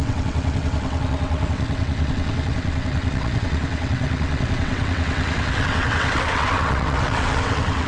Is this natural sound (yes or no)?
no